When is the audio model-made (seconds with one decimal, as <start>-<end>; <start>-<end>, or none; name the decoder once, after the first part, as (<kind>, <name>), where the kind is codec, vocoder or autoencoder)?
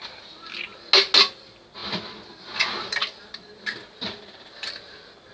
none